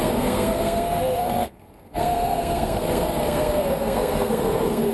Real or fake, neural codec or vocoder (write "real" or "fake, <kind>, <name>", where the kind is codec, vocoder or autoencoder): fake, codec, SNAC